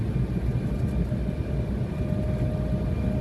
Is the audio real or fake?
real